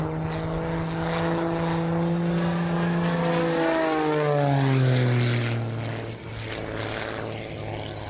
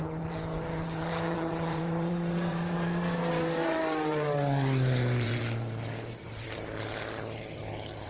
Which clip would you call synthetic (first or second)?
second